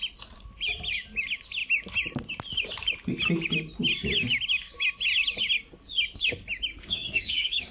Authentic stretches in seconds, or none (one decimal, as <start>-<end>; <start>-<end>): 0.0-6.8